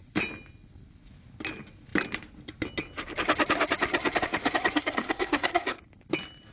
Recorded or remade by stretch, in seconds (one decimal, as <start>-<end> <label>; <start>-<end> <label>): 0.0-4.8 recorded; 4.8-5.8 remade; 5.8-6.5 recorded